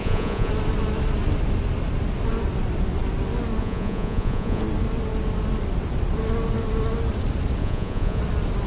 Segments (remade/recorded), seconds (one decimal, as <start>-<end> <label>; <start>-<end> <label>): 0.0-0.5 remade; 0.5-3.6 recorded; 3.6-4.6 remade; 4.6-7.6 recorded; 7.6-8.2 remade; 8.2-8.7 recorded